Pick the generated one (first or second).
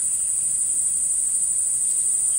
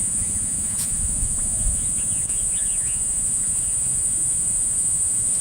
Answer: second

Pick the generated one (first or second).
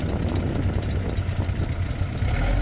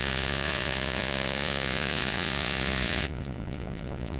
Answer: second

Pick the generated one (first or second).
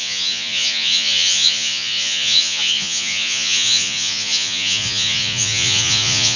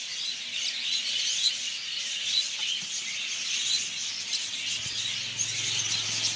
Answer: first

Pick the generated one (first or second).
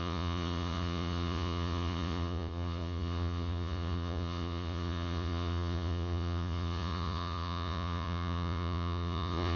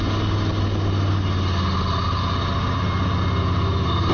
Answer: first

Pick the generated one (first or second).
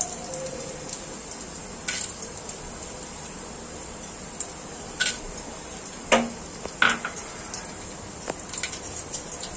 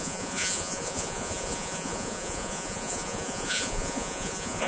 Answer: second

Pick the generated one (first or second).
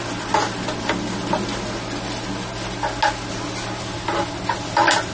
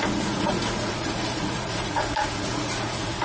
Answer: second